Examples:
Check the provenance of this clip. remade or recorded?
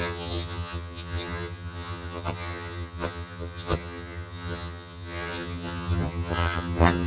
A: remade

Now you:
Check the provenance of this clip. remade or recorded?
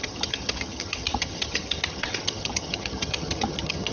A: remade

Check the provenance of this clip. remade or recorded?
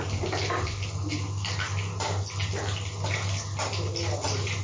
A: recorded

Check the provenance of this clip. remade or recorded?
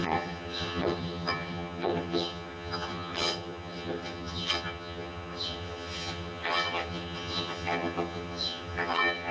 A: remade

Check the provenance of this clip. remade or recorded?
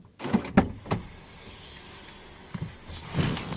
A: recorded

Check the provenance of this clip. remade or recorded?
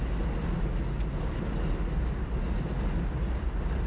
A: recorded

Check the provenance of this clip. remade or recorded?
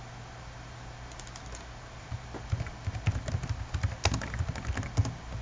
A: recorded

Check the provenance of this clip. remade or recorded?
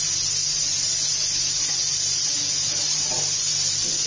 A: recorded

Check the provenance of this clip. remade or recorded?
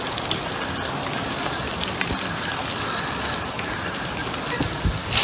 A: recorded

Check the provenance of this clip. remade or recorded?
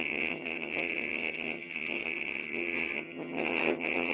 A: remade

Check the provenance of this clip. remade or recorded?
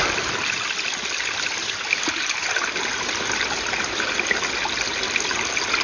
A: recorded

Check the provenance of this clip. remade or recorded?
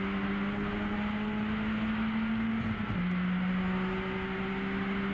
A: recorded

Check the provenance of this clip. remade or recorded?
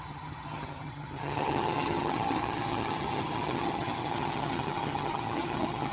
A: remade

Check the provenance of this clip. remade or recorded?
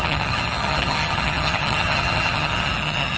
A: remade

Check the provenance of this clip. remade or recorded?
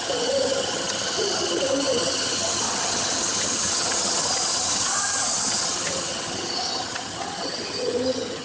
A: remade